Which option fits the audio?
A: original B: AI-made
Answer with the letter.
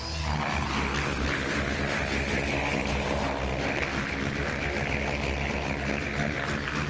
A